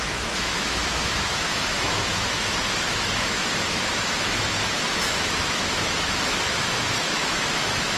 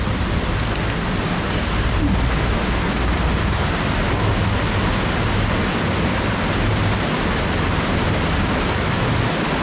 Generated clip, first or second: first